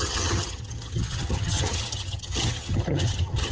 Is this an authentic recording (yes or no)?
no